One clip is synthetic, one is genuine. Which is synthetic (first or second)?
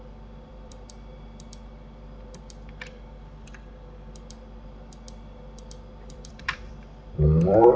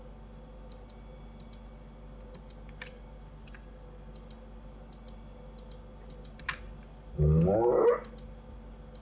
first